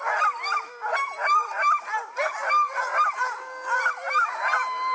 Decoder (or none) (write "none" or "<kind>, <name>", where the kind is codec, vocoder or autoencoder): none